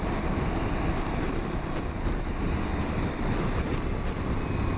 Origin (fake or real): real